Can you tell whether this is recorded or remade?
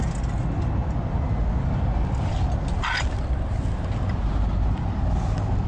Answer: recorded